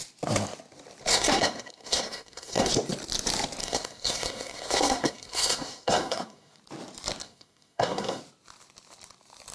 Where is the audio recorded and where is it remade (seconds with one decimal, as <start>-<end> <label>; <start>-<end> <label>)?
0.0-1.1 recorded; 1.1-2.7 remade; 2.7-3.6 recorded; 3.6-6.6 remade; 6.6-7.2 recorded; 7.2-8.2 remade; 8.2-9.5 recorded